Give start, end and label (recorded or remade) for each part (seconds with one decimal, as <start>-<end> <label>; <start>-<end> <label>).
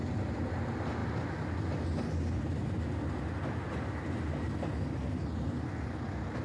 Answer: 0.0-6.4 recorded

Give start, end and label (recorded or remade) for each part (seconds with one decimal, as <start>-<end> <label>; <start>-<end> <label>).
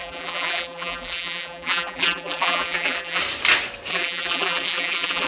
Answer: 0.0-3.2 remade; 3.2-3.9 recorded; 3.9-5.3 remade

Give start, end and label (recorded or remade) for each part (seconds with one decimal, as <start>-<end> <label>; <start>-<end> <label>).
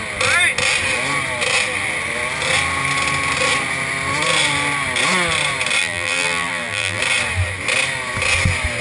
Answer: 0.0-5.8 recorded; 5.8-7.0 remade; 7.0-8.8 recorded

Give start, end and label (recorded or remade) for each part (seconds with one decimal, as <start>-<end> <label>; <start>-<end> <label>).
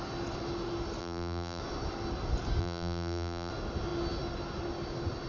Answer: 0.0-1.0 recorded; 1.0-1.6 remade; 1.6-2.6 recorded; 2.6-3.5 remade; 3.5-5.3 recorded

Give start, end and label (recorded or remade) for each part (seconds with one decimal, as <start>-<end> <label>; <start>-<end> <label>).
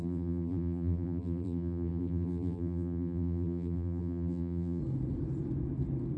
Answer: 0.0-4.8 remade; 4.8-6.2 recorded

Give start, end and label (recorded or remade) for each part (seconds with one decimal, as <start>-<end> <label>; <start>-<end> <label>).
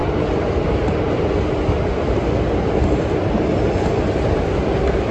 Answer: 0.0-5.1 recorded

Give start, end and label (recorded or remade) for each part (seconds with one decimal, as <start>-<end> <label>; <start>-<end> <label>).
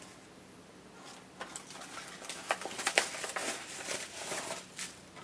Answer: 0.0-3.4 recorded; 3.4-4.3 remade; 4.3-5.2 recorded